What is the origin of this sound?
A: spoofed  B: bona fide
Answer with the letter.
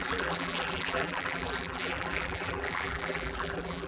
A